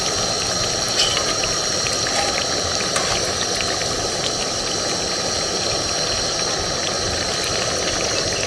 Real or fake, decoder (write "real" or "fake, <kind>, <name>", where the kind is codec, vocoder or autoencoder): real